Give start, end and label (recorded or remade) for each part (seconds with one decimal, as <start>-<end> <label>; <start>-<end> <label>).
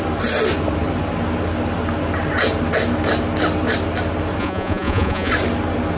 0.0-4.4 recorded; 4.4-5.3 remade; 5.3-6.0 recorded